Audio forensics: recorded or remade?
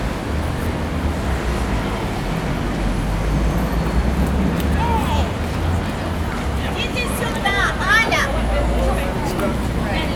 recorded